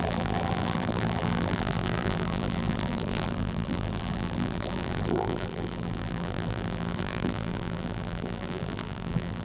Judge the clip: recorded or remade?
remade